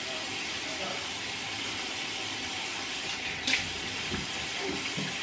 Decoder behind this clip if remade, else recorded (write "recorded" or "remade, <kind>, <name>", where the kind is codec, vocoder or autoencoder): remade, vocoder, BigVGAN v2